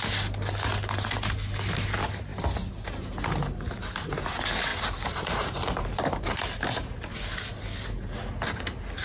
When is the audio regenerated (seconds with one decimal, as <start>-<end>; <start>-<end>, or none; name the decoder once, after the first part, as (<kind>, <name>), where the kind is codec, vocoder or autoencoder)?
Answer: 4.7-6.4 (vocoder, BigVGAN v2)